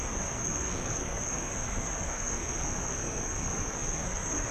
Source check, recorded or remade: remade